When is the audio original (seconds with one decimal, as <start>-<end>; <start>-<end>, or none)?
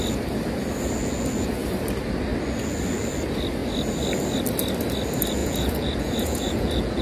0.0-5.4